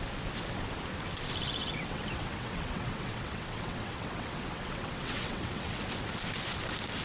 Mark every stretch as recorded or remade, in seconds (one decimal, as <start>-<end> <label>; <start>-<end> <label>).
0.0-1.6 recorded; 1.6-5.8 remade; 5.8-7.0 recorded